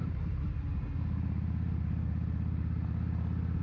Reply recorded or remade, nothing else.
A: recorded